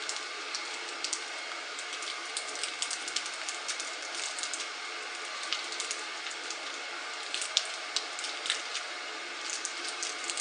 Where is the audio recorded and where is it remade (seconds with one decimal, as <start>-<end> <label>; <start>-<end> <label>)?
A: 0.0-8.7 remade; 8.7-9.3 recorded; 9.3-10.4 remade